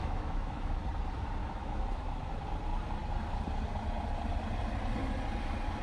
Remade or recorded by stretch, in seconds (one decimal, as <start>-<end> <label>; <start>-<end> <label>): 0.0-0.8 remade; 0.8-1.4 recorded; 1.4-2.3 remade; 2.3-5.8 recorded